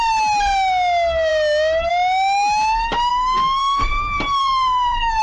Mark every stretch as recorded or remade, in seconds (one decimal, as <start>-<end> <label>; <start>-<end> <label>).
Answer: 0.0-3.1 recorded; 3.1-3.9 remade; 3.9-4.4 recorded; 4.4-5.2 remade